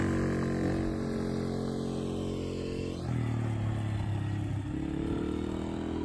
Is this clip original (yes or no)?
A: yes